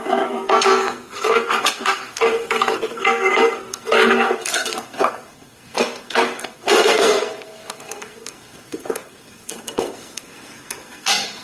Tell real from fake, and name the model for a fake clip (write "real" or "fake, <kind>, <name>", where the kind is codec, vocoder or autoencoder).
fake, codec, SNAC